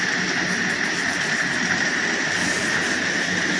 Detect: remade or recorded recorded